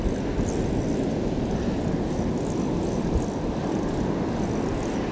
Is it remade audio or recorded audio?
recorded